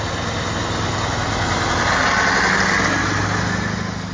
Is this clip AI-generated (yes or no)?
no